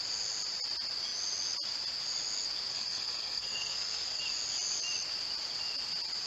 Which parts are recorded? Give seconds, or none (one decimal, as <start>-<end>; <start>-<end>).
0.0-2.7; 4.2-6.3